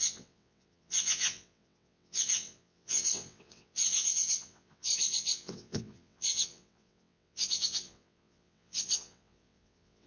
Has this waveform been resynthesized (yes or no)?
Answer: yes